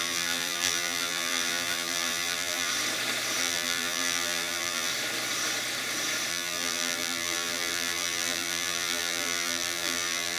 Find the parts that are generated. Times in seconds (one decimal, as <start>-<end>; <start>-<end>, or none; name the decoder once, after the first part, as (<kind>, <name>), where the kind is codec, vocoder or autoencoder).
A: 0.0-2.7 (vocoder, BigVGAN v2); 3.4-4.9; 6.3-10.4

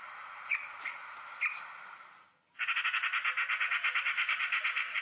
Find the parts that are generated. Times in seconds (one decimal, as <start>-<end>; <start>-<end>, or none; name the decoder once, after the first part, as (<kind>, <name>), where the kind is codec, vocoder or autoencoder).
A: 0.0-1.0 (vocoder, BigVGAN v2); 4.0-5.0

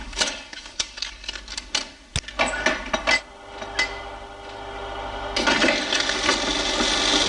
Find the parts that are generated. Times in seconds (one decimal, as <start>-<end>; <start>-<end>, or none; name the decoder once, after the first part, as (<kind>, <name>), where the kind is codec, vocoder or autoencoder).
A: 0.0-1.3 (codec, DAC)

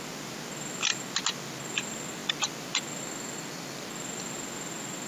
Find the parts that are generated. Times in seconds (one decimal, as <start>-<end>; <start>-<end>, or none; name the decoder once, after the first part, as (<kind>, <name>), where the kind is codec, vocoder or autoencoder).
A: none

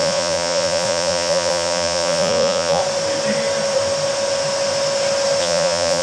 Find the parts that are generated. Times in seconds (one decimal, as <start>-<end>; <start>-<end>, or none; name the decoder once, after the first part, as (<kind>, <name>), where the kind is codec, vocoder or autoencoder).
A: 0.0-2.8 (vocoder, Vocos); 5.4-6.0

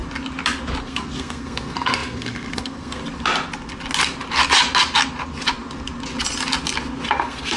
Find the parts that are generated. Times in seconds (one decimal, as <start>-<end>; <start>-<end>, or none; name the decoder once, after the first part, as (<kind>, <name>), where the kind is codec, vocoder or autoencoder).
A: 0.8-3.0 (codec, SNAC); 7.1-7.6

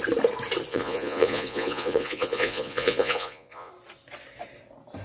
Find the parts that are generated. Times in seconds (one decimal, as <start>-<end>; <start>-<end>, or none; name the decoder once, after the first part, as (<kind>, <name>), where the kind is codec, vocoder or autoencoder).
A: 0.7-3.7 (vocoder, Vocos)

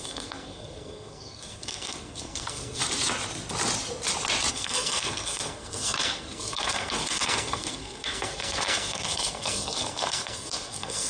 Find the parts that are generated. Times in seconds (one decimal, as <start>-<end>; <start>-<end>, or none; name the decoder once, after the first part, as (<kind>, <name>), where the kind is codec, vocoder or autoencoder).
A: 0.0-2.8 (codec, SNAC); 4.5-11.1